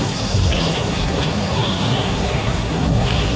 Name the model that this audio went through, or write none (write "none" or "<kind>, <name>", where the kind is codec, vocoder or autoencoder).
codec, SNAC